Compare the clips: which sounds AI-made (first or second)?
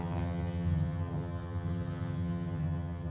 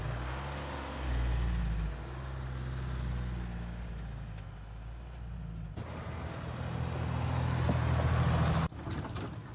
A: first